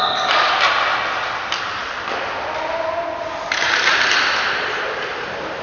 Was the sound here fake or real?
real